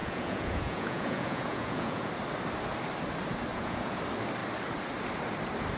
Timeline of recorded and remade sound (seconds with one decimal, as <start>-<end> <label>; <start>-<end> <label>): 0.0-2.1 remade; 2.1-3.5 recorded; 3.5-4.0 remade; 4.0-5.8 recorded

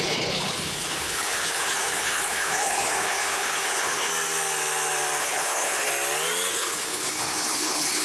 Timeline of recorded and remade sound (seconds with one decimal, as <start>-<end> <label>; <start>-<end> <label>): 0.0-4.1 remade; 4.1-5.2 recorded; 5.2-5.9 remade; 5.9-6.5 recorded; 6.5-8.0 remade

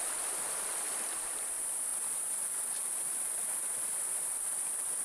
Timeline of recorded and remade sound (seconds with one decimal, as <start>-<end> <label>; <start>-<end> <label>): 0.0-1.9 recorded; 1.9-5.0 remade

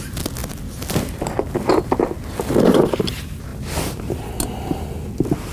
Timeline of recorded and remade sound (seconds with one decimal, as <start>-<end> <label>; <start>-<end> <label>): 0.0-5.5 recorded